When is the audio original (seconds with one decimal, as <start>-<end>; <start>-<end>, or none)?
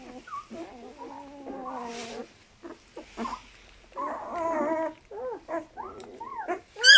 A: 0.0-7.0